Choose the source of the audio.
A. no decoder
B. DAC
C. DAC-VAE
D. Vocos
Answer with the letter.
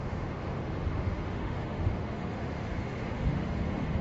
C